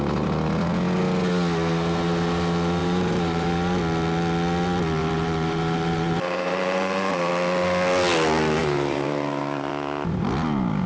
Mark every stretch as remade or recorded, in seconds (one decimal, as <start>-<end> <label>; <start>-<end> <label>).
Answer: 0.0-2.8 recorded; 2.8-3.8 remade; 3.8-5.0 recorded; 5.0-7.3 remade; 7.3-8.6 recorded; 8.6-9.7 remade; 9.7-10.9 recorded

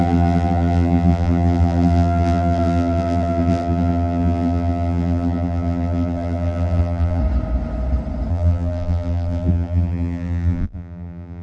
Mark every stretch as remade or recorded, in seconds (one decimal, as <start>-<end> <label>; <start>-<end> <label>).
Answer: 0.0-7.2 remade; 7.2-8.3 recorded; 8.3-11.4 remade

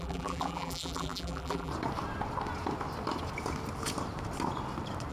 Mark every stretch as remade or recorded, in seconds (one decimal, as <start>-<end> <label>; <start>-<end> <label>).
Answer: 0.0-1.7 remade; 1.7-5.1 recorded

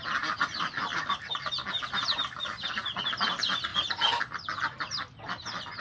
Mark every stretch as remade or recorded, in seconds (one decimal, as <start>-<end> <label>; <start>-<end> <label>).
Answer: 0.0-0.9 recorded; 0.9-1.5 remade; 1.5-5.8 recorded

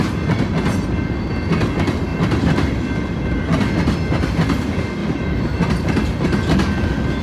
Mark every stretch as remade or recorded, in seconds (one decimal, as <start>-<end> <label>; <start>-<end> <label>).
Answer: 0.0-2.1 recorded; 2.1-2.7 remade; 2.7-5.0 recorded; 5.0-5.6 remade; 5.6-7.2 recorded

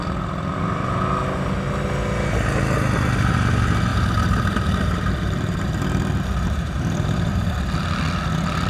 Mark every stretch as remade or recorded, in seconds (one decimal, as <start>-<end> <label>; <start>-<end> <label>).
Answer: 0.0-3.9 recorded; 3.9-7.3 remade; 7.3-8.7 recorded

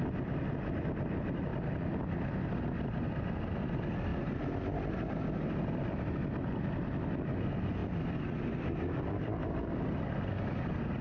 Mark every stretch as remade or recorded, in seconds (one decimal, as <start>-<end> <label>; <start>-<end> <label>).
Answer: 0.0-7.8 recorded; 7.8-10.3 remade; 10.3-11.0 recorded

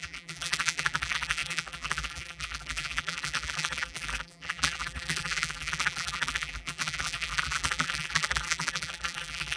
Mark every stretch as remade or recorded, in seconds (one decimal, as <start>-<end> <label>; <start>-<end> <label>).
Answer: 0.0-9.6 remade